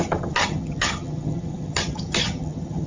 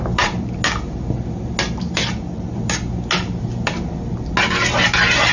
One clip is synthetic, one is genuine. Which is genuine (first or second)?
second